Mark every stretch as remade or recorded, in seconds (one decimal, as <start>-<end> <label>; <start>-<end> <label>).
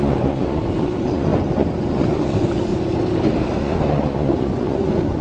0.0-2.7 remade; 2.7-3.6 recorded; 3.6-5.2 remade